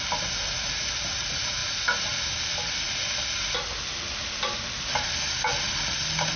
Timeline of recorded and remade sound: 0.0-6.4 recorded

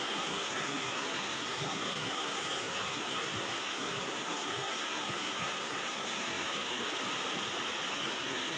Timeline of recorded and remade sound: 0.0-6.8 remade; 6.8-7.9 recorded; 7.9-8.6 remade

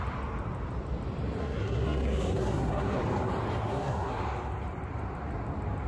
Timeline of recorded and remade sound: 0.0-1.4 recorded; 1.4-3.0 remade; 3.0-3.7 recorded; 3.7-4.2 remade; 4.2-5.9 recorded